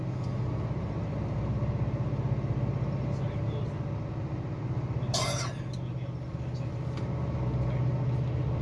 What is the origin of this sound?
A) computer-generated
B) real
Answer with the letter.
B